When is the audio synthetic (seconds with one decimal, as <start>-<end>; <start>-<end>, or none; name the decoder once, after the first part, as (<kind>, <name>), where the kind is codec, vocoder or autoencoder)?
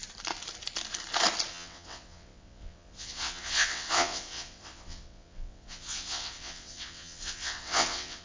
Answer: 1.5-8.2 (vocoder, WaveNeXt)